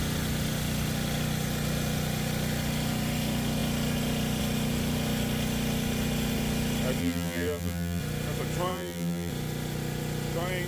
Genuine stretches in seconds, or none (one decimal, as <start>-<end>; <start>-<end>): 0.0-7.0; 8.0-8.7; 9.3-10.7